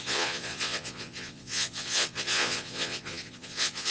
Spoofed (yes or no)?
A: yes